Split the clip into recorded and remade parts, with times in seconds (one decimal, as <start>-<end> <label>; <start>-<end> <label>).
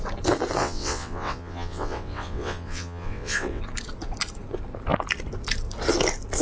0.0-0.6 recorded; 0.6-3.6 remade; 3.6-6.4 recorded